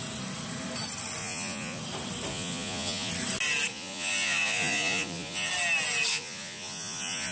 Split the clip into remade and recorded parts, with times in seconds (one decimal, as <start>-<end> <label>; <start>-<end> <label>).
0.0-1.2 recorded; 1.2-1.8 remade; 1.8-2.3 recorded; 2.3-3.1 remade; 3.1-3.7 recorded; 3.7-5.5 remade; 5.5-6.1 recorded; 6.1-7.3 remade